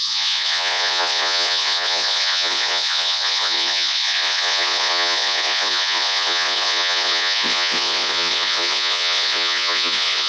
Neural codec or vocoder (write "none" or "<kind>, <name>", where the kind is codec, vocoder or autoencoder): vocoder, Vocos